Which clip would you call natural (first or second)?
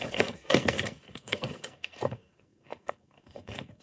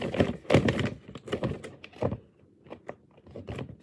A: second